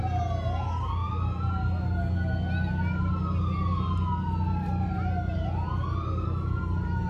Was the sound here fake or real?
real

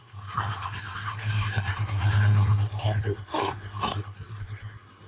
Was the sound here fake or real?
fake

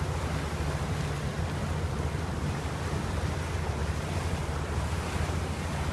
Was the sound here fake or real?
real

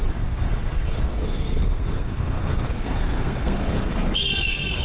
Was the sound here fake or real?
fake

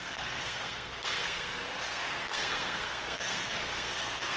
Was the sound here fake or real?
fake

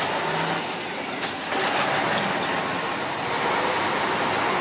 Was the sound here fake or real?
real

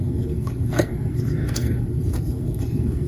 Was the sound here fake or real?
fake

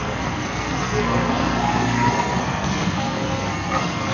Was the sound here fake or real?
fake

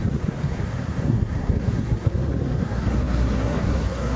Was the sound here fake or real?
fake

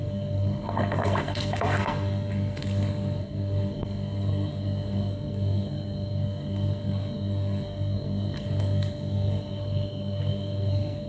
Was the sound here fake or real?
fake